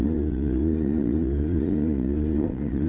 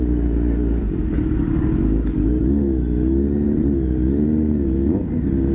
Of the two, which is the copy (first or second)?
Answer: first